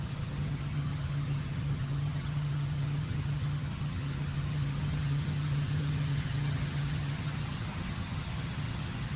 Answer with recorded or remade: remade